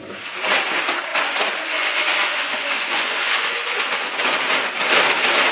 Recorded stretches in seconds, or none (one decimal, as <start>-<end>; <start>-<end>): 0.0-1.1; 4.4-5.5